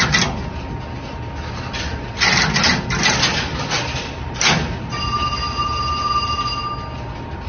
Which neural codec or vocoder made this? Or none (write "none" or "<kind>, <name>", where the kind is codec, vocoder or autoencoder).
none